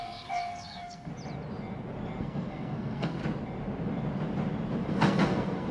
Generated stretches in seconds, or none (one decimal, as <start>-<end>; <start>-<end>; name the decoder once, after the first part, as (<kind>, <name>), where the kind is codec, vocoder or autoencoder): 0.0-1.1 (codec, SNAC); 2.2-3.2; 4.9-5.7